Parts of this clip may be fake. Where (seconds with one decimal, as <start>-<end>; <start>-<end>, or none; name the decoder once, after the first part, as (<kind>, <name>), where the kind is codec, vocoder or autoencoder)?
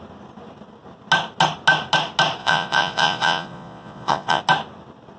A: 2.4-4.4 (vocoder, Vocos)